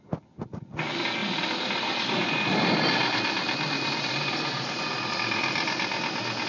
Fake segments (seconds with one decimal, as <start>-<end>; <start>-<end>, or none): 1.2-5.1